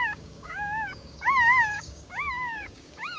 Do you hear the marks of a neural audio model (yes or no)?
yes